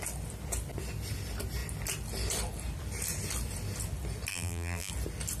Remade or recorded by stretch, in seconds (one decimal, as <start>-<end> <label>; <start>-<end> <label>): 0.0-4.3 recorded; 4.3-4.9 remade; 4.9-5.4 recorded